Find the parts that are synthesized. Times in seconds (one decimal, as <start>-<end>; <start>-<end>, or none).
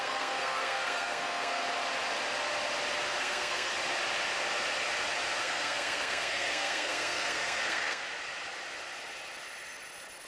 0.0-1.6; 3.2-3.7; 5.4-8.1